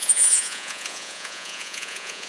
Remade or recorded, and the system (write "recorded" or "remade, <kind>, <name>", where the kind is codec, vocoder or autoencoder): remade, vocoder, Vocos